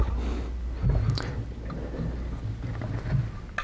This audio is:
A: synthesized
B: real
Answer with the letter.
B